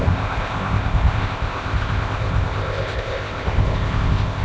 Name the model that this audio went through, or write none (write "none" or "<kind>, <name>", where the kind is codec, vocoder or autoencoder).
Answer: codec, ZipCodec